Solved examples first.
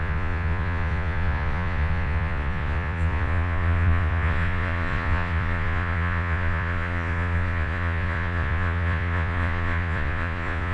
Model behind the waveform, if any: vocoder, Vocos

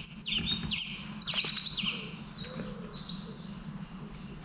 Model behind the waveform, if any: none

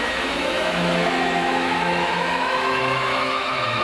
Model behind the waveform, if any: autoencoder, DAC-VAE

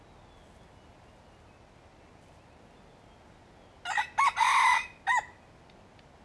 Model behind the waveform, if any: none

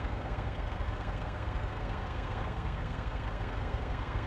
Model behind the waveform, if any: codec, SNAC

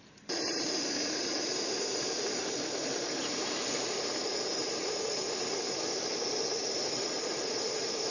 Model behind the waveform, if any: vocoder, BigVGAN v2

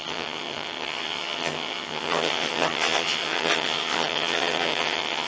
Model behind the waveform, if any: vocoder, HiFi-GAN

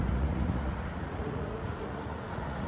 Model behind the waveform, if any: vocoder, Vocos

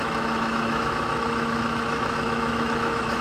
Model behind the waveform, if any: autoencoder, DAC-VAE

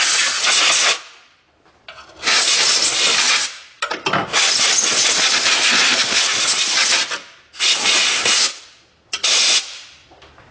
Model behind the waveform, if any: none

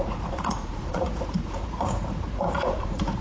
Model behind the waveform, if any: vocoder, Vocos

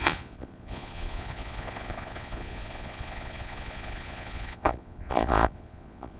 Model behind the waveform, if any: vocoder, Vocos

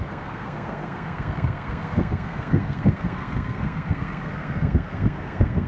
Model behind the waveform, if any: codec, SNAC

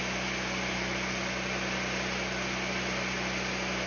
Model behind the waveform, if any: none